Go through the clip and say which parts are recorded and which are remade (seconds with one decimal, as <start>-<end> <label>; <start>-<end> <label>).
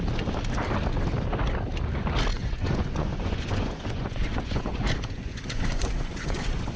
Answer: 0.0-2.3 recorded; 2.3-6.8 remade